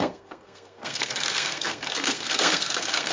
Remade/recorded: remade